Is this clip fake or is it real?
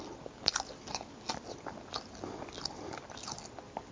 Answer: real